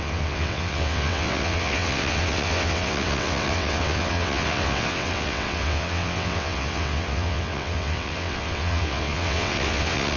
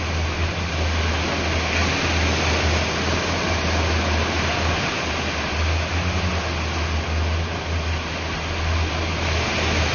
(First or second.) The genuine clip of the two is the second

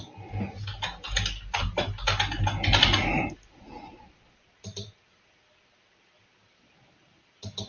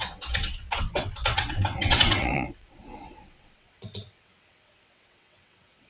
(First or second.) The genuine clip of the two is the first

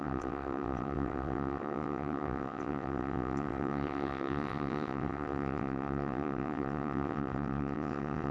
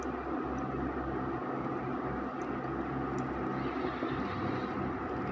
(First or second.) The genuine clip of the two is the second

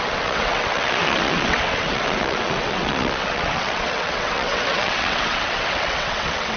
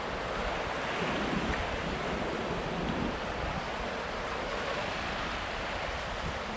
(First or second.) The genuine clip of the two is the second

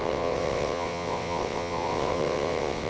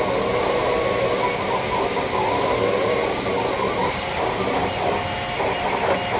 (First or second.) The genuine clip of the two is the second